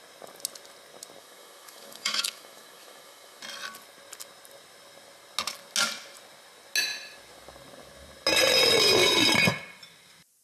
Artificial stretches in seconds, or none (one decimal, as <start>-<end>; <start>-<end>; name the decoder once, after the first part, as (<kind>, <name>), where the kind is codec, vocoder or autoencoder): 1.2-3.4 (autoencoder, DAC-VAE)